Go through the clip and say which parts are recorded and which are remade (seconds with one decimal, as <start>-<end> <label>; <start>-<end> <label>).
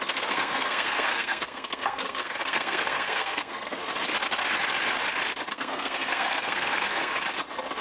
0.0-3.8 remade; 3.8-5.5 recorded; 5.5-7.1 remade; 7.1-7.8 recorded